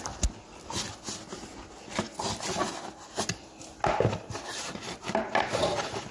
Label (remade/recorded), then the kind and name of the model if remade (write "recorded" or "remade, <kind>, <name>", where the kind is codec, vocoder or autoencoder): recorded